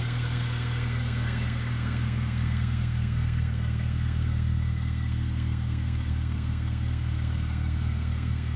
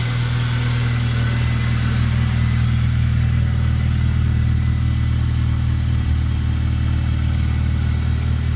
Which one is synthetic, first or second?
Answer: first